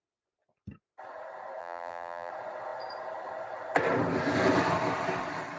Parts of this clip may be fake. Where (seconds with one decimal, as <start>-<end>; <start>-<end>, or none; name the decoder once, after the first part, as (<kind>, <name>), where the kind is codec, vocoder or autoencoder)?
1.6-2.3 (vocoder, BigVGAN v2)